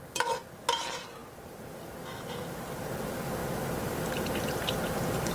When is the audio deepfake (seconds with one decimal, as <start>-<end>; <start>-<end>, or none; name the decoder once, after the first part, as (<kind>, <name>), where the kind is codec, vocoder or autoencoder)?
none